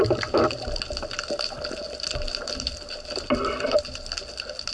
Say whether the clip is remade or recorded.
recorded